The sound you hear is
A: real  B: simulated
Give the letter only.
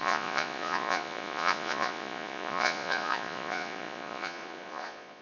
B